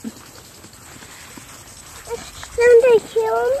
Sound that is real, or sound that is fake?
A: real